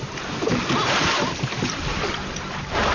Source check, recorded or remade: remade